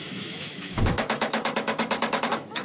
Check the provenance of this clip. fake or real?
fake